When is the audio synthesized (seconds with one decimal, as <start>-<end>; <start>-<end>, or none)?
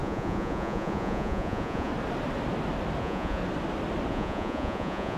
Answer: 0.0-1.9; 3.0-3.4; 4.1-5.2